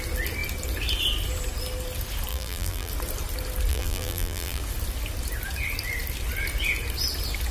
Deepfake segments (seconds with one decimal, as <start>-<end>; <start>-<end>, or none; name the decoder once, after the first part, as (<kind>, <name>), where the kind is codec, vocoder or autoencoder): 2.3-2.9 (vocoder, BigVGAN v2); 3.7-4.6